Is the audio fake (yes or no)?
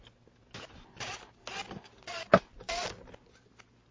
no